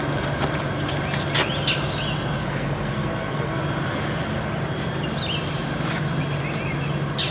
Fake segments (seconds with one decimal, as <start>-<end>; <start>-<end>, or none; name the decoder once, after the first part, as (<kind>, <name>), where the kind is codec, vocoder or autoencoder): 2.4-3.6 (codec, SNAC)